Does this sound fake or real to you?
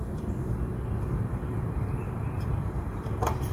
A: fake